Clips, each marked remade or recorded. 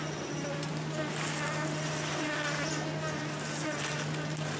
recorded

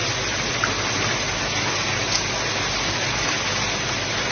recorded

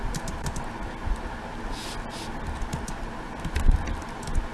recorded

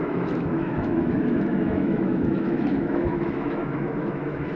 remade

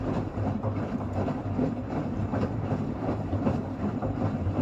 remade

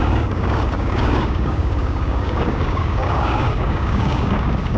remade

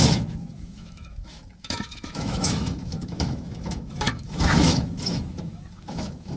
remade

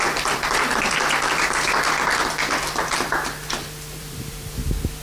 remade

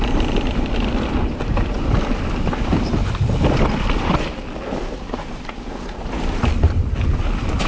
remade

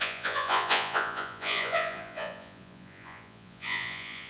remade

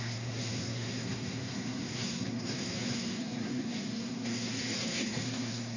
remade